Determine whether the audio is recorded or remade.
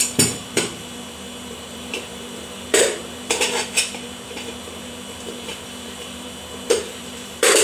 remade